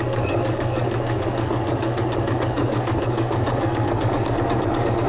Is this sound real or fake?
fake